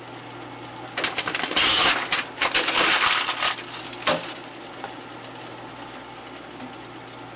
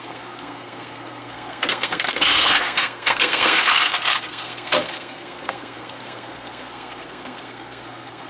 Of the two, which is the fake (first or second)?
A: second